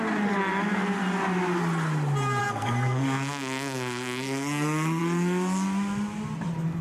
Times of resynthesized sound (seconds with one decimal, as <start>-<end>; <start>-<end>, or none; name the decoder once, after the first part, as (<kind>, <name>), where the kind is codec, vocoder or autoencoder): 2.4-5.0 (codec, SNAC)